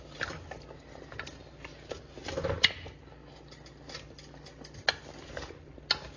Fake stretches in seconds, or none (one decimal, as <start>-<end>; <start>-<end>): none